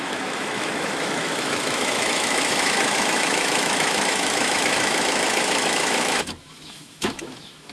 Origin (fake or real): fake